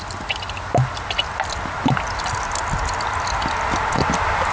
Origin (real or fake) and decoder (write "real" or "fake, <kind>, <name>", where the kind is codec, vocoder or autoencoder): real